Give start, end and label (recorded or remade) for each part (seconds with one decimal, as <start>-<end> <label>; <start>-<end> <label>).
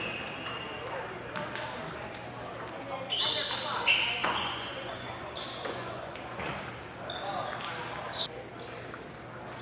0.0-4.2 recorded; 4.2-6.6 remade; 6.6-9.6 recorded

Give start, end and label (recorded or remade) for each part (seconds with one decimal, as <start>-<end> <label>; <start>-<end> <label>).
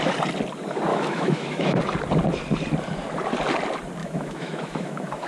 0.0-0.9 recorded; 0.9-1.8 remade; 1.8-4.0 recorded; 4.0-5.3 remade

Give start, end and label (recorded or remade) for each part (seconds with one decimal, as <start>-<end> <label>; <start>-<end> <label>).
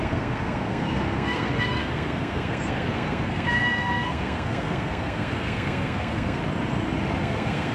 0.0-6.4 remade; 6.4-7.2 recorded; 7.2-7.7 remade